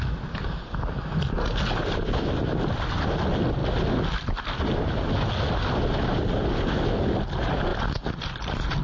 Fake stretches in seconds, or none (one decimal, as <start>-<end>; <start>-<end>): none